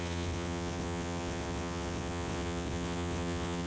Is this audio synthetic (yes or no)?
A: yes